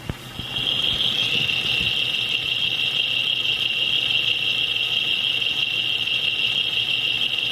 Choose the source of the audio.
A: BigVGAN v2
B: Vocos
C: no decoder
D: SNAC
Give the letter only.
C